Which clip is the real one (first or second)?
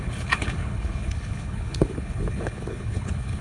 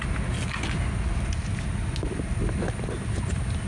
second